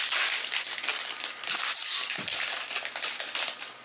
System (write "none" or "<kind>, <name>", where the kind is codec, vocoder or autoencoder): vocoder, BigVGAN v2